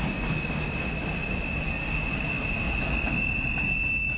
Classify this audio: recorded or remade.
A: recorded